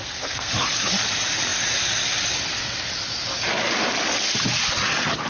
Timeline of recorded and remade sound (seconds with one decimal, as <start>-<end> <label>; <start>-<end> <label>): 0.0-0.5 remade; 0.5-5.3 recorded